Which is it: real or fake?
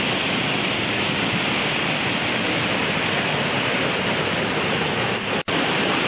real